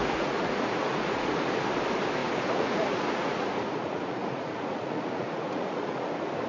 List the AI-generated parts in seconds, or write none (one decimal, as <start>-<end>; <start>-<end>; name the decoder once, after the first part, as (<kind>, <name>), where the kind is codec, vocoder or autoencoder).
0.0-1.6 (vocoder, Vocos); 2.2-6.1